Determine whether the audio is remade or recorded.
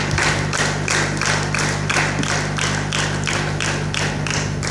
recorded